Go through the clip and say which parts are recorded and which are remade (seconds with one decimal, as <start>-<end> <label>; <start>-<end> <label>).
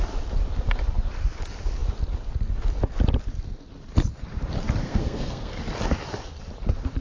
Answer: 0.0-4.8 recorded; 4.8-5.6 remade; 5.6-7.0 recorded